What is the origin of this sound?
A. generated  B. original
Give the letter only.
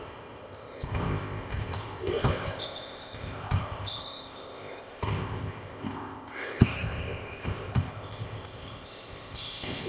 A